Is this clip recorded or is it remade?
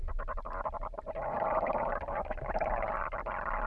recorded